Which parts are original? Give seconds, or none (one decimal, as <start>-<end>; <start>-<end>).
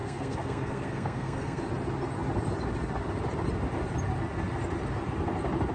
1.6-5.7